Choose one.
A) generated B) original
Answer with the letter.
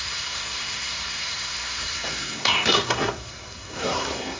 A